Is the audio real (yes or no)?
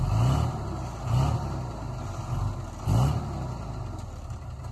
yes